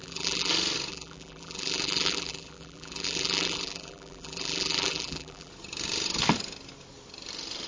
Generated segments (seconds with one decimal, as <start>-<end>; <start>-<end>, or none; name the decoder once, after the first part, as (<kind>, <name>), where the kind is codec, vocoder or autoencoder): 0.0-0.5 (vocoder, BigVGAN v2); 0.9-5.5